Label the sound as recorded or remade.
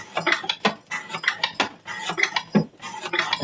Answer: recorded